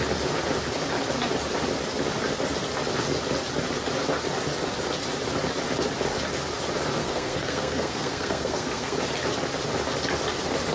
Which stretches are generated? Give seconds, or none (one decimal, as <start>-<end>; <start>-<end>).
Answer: 7.0-9.0